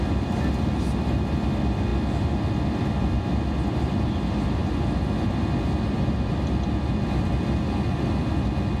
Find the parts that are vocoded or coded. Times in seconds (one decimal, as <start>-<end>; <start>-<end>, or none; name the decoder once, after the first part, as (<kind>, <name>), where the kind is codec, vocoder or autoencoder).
none